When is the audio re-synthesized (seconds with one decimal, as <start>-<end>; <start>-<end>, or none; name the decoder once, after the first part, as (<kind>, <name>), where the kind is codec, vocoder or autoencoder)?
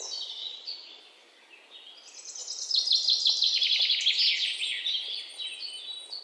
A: 0.4-1.0 (vocoder, Vocos)